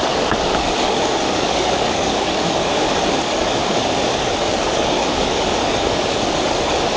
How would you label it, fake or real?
fake